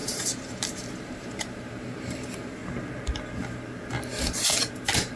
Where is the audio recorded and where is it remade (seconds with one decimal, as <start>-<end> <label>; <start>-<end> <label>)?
0.0-2.6 remade; 2.6-4.7 recorded; 4.7-5.2 remade